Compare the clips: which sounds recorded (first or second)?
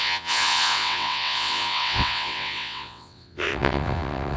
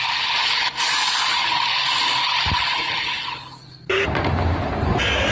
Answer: second